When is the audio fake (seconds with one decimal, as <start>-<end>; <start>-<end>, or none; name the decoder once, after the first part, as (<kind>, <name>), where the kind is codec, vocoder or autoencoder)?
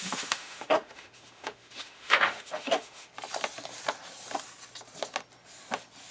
0.0-3.1 (autoencoder, DAC-VAE)